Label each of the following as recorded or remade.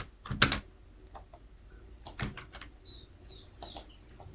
recorded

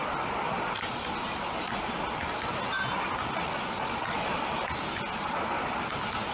recorded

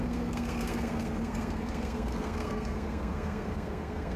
remade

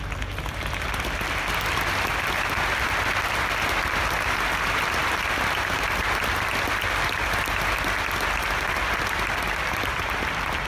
recorded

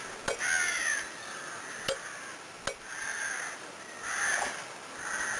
recorded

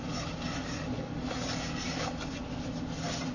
recorded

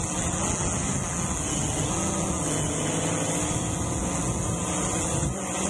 recorded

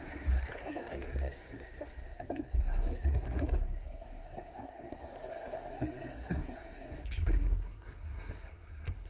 remade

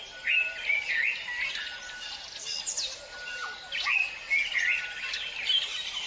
recorded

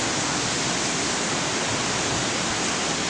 recorded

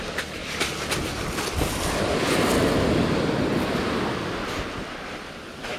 recorded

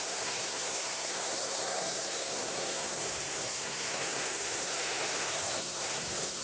remade